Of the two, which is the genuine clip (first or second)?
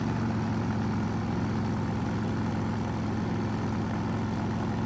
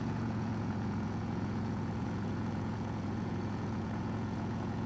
first